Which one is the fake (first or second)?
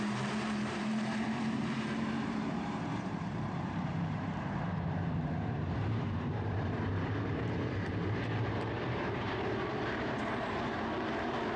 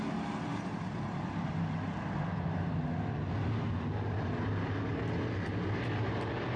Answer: first